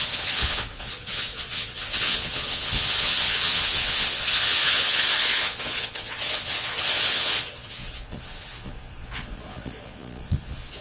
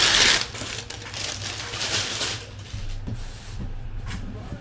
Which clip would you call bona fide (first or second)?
second